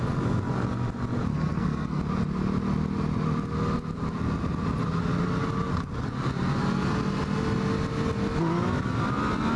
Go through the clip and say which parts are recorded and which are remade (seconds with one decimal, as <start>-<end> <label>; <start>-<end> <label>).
0.0-1.3 recorded; 1.3-2.0 remade; 2.0-9.6 recorded